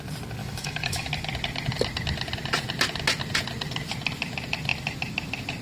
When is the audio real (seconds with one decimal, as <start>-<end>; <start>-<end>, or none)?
0.0-0.4; 1.1-5.6